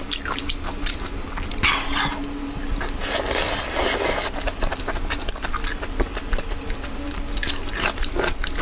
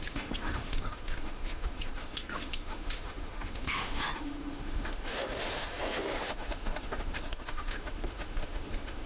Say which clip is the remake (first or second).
second